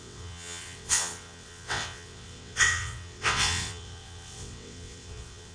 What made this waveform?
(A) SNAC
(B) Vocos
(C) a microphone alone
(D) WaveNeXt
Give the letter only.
D